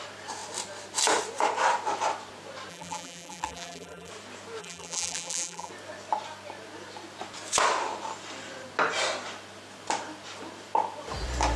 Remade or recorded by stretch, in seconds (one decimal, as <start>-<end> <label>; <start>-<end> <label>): 0.0-2.7 recorded; 2.7-4.1 remade; 4.1-4.6 recorded; 4.6-5.7 remade; 5.7-11.6 recorded